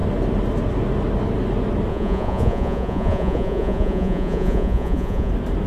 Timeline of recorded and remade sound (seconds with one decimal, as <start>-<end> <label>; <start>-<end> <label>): 0.0-1.9 recorded; 1.9-5.3 remade; 5.3-5.7 recorded